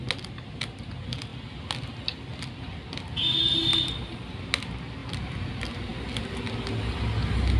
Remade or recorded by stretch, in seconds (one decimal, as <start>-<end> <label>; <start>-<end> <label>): 0.0-7.6 recorded